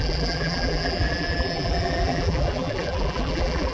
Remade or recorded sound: remade